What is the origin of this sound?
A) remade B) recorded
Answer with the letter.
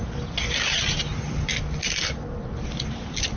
B